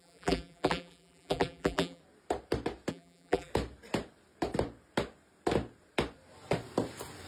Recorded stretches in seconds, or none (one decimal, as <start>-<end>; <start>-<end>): 2.0-2.9; 3.5-7.3